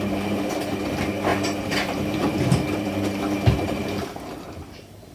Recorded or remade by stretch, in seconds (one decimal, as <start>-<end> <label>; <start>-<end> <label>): 0.0-1.3 recorded; 1.3-2.9 remade; 2.9-5.1 recorded